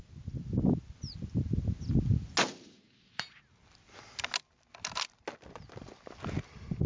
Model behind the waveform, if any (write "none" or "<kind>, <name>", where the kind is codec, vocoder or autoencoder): none